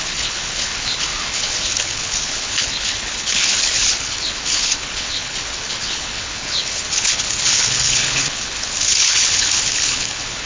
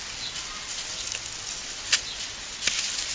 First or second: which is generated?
first